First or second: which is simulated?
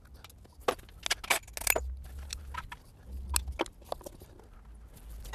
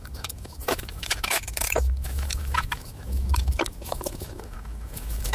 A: second